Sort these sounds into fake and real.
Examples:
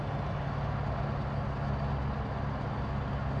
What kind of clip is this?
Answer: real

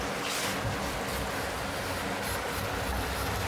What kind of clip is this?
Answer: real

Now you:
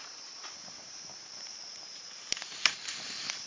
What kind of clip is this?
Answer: fake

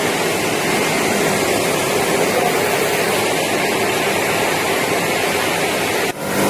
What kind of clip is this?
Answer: fake